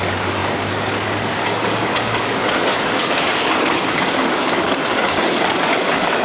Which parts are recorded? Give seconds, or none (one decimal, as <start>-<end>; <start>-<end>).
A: none